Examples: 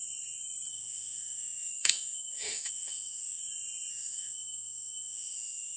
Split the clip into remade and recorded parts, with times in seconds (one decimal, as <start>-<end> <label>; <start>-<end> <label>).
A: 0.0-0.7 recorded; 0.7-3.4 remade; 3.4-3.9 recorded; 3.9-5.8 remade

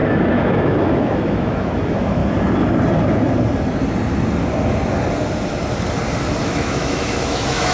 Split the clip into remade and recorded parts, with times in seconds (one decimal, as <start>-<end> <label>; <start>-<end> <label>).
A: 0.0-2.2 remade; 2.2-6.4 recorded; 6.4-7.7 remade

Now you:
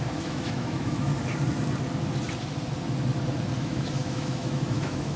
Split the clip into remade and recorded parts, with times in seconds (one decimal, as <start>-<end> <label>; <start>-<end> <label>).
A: 0.0-1.1 remade; 1.1-3.6 recorded; 3.6-5.2 remade